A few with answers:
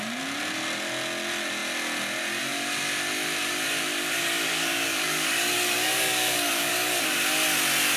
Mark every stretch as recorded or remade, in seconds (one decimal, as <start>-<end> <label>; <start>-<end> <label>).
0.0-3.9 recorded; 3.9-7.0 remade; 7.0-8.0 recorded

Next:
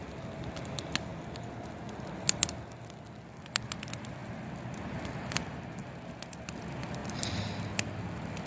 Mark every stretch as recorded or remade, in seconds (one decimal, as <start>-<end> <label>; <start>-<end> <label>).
0.0-8.5 recorded

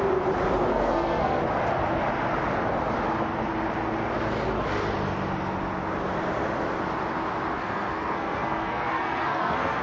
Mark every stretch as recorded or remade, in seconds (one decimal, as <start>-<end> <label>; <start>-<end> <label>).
0.0-0.7 recorded; 0.7-1.4 remade; 1.4-7.6 recorded; 7.6-9.8 remade

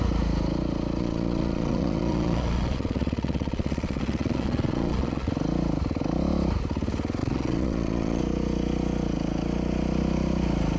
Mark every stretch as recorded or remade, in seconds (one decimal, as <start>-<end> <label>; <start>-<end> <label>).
0.0-1.0 recorded; 1.0-5.3 remade; 5.3-7.2 recorded; 7.2-8.2 remade; 8.2-10.8 recorded